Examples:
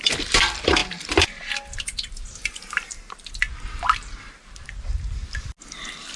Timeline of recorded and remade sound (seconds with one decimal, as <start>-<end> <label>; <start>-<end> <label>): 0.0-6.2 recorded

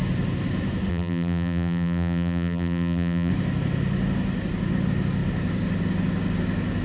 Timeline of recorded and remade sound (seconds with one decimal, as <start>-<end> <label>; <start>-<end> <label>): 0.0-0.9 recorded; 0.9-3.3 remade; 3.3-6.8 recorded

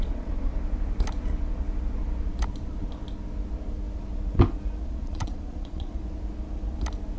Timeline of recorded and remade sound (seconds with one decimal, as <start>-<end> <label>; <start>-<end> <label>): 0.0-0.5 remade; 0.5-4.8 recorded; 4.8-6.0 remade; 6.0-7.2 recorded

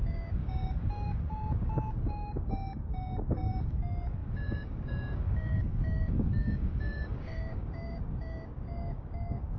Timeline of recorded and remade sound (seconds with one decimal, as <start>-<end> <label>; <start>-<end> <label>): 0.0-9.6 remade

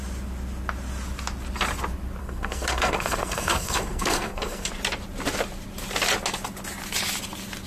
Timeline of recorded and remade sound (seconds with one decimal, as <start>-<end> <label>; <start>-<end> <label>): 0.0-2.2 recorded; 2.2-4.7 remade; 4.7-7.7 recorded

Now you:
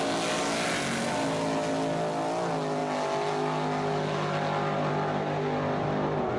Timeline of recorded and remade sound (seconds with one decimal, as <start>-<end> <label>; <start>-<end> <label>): 0.0-6.4 recorded